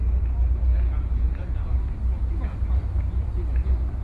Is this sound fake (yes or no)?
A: no